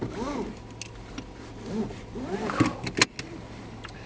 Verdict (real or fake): real